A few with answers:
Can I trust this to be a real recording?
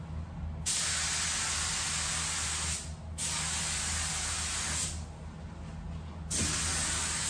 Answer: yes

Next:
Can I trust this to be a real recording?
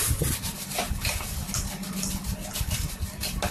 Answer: yes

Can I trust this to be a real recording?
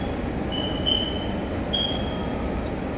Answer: yes